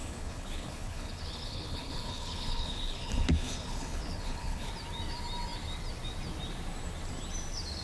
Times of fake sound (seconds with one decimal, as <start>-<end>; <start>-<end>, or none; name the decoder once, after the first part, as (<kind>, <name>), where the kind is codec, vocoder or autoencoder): 0.0-4.7 (codec, HILCodec)